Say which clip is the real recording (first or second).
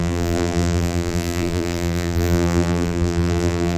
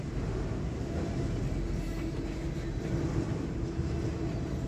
second